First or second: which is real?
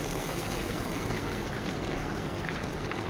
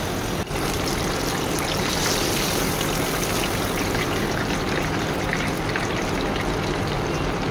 second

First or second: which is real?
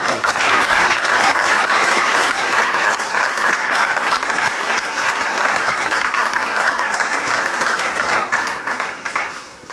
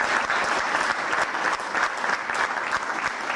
second